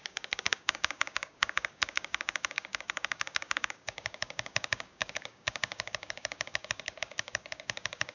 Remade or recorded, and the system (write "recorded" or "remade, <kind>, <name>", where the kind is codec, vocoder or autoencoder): remade, codec, DAC